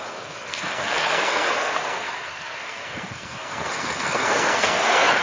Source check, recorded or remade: remade